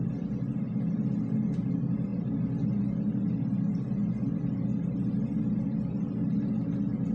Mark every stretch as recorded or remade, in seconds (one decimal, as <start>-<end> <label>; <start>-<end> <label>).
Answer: 0.0-7.1 recorded